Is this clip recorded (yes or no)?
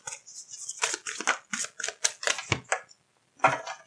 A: yes